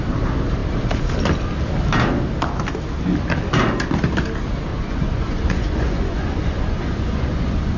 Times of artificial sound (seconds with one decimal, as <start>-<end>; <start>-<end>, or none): 4.7-7.8